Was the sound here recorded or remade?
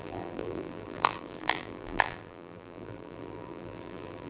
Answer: remade